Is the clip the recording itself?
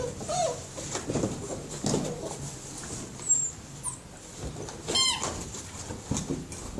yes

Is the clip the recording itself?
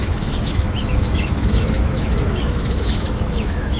no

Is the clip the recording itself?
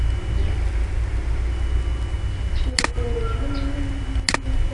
yes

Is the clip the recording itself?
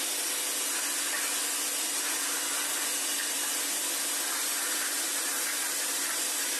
yes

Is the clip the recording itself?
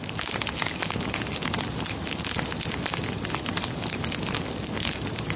yes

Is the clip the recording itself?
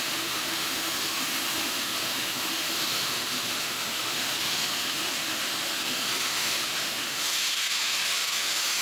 no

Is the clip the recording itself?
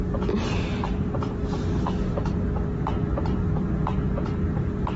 yes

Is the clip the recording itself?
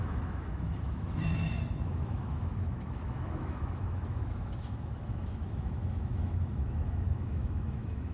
no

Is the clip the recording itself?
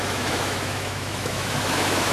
no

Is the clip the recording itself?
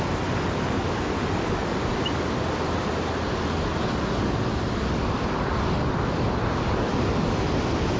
yes